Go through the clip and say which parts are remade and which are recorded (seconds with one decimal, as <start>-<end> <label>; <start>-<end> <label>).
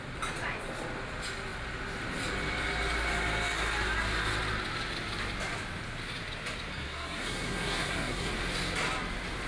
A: 0.0-6.7 recorded; 6.7-8.3 remade; 8.3-9.5 recorded